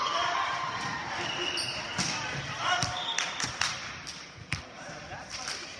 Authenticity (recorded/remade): remade